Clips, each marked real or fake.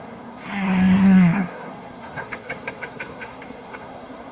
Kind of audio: fake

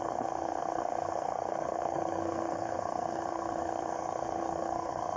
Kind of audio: fake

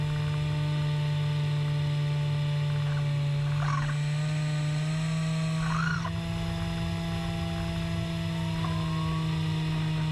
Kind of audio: real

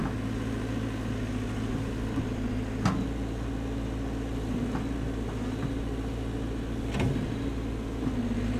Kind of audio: real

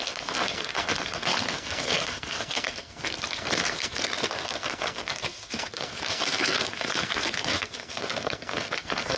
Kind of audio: fake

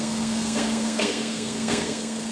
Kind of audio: fake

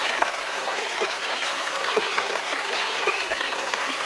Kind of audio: fake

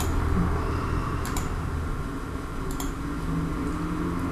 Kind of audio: real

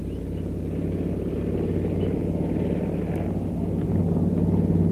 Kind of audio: real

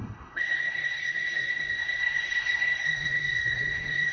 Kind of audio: fake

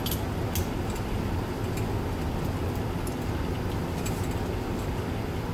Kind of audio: real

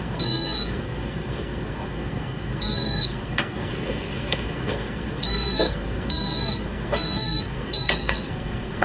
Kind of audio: fake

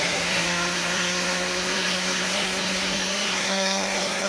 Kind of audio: fake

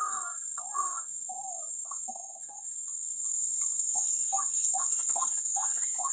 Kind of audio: fake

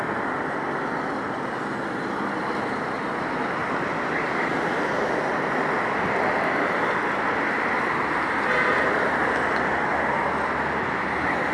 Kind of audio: real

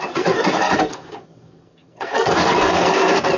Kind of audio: fake